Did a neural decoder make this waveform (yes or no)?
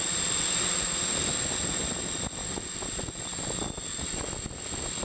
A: no